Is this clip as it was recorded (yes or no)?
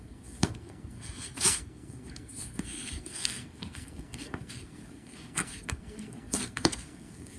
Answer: no